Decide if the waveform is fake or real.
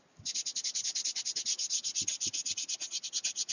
real